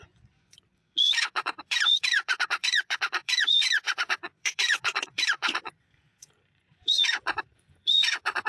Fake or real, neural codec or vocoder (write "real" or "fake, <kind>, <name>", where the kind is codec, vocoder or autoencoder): fake, vocoder, Vocos